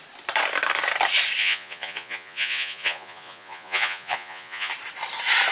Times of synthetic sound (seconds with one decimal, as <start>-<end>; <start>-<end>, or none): 1.4-4.7